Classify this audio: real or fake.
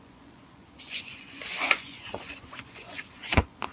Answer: fake